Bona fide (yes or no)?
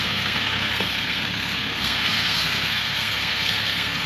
no